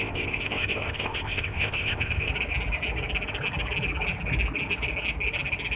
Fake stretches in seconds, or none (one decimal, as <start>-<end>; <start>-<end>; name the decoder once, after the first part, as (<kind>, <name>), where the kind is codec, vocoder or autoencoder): 0.0-2.3 (codec, ZipCodec)